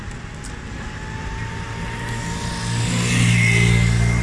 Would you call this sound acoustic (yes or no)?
yes